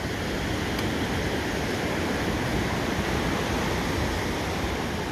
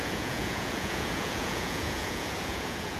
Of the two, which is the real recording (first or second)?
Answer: first